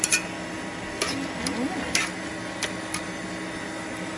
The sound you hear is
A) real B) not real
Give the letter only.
A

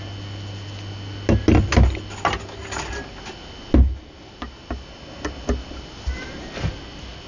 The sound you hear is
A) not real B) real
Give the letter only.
B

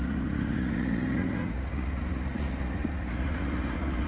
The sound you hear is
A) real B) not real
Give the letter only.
B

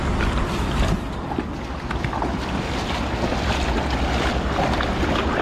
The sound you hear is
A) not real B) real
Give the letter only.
B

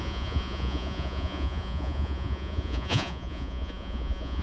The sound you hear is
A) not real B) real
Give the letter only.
A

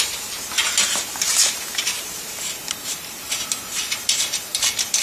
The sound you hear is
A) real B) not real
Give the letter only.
B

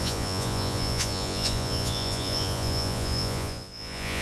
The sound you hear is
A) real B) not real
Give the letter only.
B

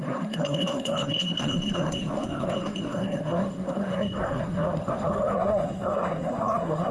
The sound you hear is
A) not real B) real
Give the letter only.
A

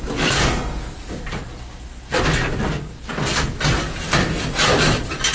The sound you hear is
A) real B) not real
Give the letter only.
A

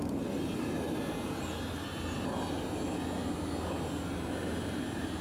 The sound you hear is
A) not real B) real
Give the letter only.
B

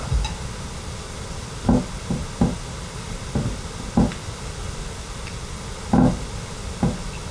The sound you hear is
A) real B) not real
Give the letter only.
A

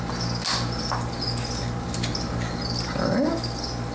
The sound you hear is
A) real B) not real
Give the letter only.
A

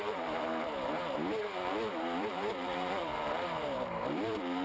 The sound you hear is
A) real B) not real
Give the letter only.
B